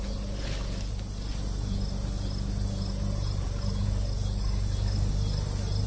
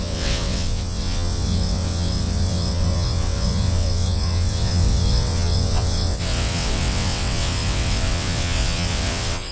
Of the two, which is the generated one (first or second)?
second